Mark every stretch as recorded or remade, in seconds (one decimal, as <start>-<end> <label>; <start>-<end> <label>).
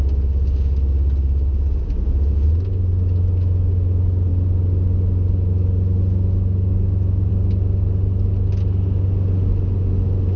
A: 0.0-10.4 recorded